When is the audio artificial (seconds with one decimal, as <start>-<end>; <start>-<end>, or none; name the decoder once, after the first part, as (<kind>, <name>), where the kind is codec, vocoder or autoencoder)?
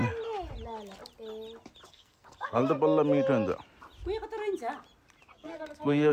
1.9-2.6 (codec, SNAC); 5.3-6.1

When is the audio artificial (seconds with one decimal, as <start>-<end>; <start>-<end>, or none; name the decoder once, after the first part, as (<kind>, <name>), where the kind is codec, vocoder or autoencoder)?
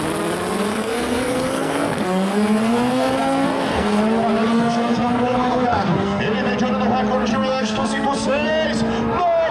0.7-4.0 (codec, SNAC); 4.5-6.2; 7.3-8.5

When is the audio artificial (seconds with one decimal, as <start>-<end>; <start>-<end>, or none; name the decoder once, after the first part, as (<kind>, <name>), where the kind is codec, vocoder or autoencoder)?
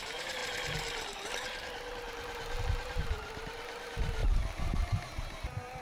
0.0-0.4 (vocoder, BigVGAN v2); 2.6-5.8